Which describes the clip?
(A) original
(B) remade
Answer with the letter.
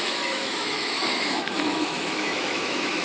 B